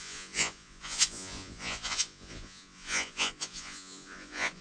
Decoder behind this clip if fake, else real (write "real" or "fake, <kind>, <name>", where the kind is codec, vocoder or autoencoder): fake, vocoder, Vocos